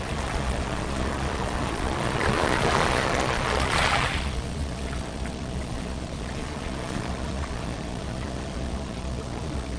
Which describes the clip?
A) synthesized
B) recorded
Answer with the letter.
A